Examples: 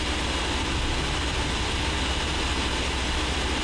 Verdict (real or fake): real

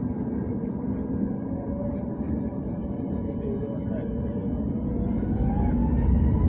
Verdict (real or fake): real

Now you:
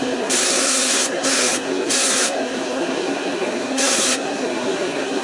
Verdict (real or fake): fake